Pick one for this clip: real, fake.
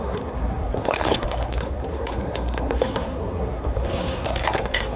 fake